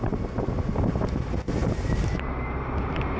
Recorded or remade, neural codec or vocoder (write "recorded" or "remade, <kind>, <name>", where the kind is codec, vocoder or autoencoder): remade, vocoder, BigVGAN v2